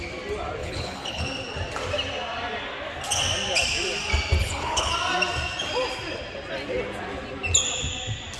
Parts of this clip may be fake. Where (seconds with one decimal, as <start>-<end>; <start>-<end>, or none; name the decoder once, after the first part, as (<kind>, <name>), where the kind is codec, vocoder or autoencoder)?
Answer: 0.6-1.2 (codec, HILCodec); 4.4-4.9